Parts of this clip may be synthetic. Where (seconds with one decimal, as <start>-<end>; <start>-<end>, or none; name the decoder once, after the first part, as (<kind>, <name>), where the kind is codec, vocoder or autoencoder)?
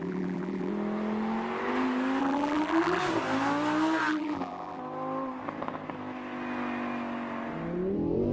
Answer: 0.0-0.7 (vocoder, BigVGAN v2); 2.2-3.0; 4.1-4.8